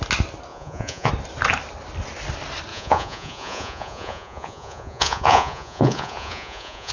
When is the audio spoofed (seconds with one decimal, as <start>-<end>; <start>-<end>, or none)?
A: 0.5-1.1; 2.7-6.9

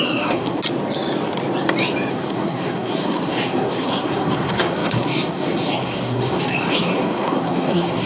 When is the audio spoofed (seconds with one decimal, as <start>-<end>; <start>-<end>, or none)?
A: 0.0-0.6; 2.1-8.1